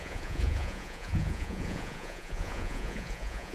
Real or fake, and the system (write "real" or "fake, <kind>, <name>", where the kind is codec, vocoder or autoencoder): fake, vocoder, Vocos